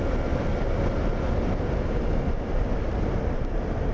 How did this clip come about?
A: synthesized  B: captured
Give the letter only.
B